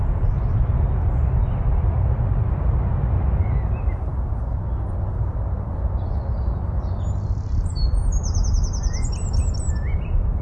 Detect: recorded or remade recorded